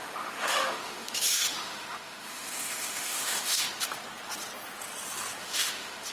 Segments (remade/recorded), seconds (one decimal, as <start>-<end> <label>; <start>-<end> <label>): 0.0-3.7 remade; 3.7-5.4 recorded; 5.4-6.1 remade